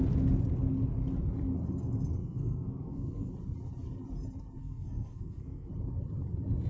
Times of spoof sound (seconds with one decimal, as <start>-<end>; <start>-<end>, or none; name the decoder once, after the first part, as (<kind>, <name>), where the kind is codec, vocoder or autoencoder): 2.2-3.3 (codec, SNAC); 4.6-5.7